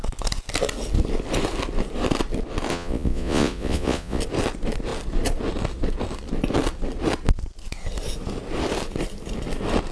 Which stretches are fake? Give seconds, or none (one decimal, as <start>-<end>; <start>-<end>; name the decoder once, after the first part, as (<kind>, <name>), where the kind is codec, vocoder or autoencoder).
2.7-4.2 (vocoder, Vocos)